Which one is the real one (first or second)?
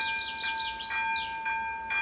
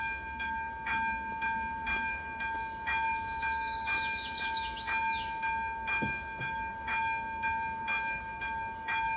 first